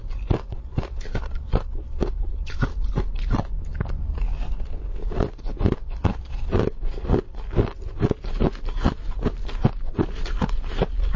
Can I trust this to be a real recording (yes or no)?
yes